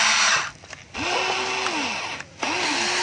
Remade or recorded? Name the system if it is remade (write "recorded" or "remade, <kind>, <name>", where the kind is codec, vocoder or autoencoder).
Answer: recorded